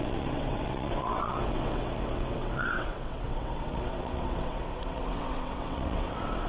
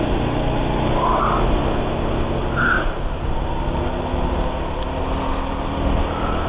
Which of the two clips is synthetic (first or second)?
first